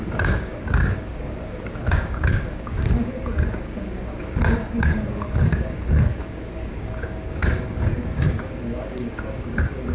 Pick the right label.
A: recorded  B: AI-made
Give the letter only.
B